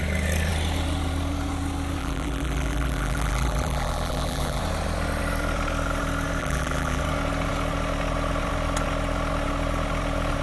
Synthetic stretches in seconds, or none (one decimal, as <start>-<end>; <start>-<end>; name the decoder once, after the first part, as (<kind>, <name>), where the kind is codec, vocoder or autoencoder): 2.0-4.6 (vocoder, BigVGAN v2); 6.4-7.0